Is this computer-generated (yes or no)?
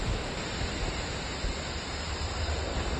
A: yes